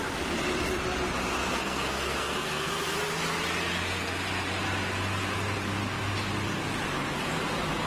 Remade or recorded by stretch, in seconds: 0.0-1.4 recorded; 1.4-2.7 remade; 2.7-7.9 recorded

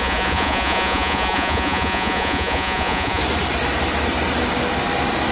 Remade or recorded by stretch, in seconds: 0.0-3.2 remade; 3.2-5.3 recorded

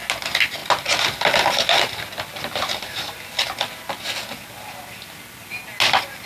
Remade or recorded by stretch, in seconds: 0.0-6.3 recorded

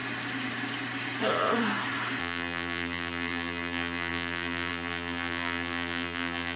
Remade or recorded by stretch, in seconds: 0.0-2.2 recorded; 2.2-6.6 remade